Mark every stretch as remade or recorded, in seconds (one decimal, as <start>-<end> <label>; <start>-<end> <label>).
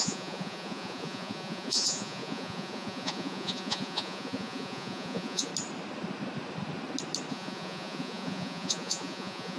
0.0-5.5 remade; 5.5-7.3 recorded; 7.3-9.6 remade